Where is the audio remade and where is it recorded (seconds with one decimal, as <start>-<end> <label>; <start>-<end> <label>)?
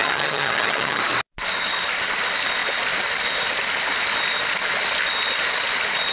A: 0.0-1.0 remade; 1.0-6.1 recorded